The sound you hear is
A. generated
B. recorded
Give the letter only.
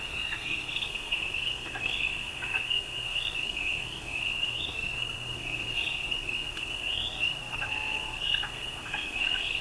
A